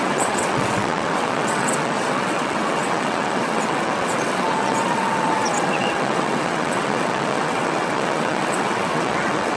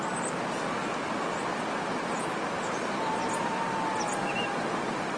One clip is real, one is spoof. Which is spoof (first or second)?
first